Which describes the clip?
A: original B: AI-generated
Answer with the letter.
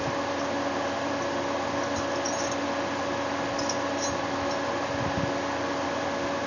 A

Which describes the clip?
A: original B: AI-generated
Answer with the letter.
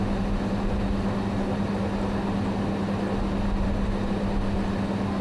A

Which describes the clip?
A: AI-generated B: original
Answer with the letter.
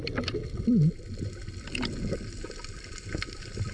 B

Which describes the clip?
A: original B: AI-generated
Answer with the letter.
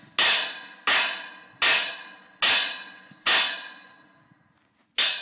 A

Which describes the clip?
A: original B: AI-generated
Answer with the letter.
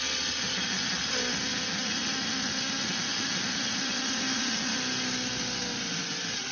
A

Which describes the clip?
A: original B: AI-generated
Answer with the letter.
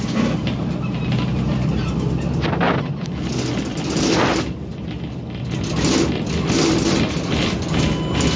A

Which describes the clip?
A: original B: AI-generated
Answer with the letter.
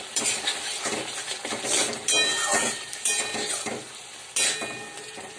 A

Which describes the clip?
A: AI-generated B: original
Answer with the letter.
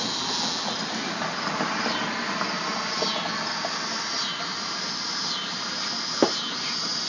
B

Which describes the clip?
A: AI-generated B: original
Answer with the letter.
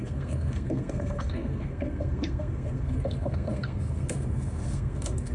A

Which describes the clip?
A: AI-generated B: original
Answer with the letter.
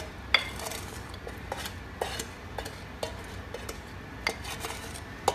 B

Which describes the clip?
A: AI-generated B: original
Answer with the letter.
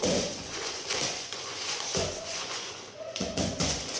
A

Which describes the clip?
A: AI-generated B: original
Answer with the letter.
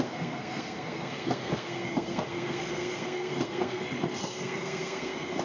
A